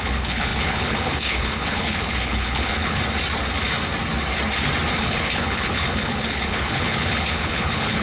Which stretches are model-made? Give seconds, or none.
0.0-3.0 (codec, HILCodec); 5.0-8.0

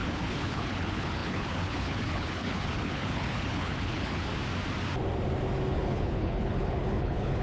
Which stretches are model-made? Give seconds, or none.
0.0-4.3 (codec, HILCodec); 5.7-7.4

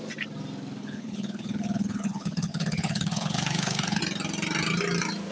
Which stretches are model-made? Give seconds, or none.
0.8-4.0 (codec, HILCodec)

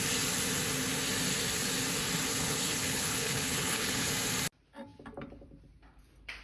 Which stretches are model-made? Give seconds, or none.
2.3-4.1 (codec, HILCodec)

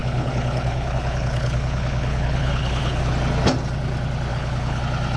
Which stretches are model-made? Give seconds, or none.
0.0-3.1 (codec, HILCodec); 4.3-4.8